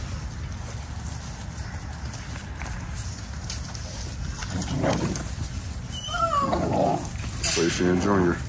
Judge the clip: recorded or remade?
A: recorded